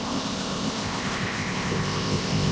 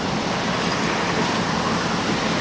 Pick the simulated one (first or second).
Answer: first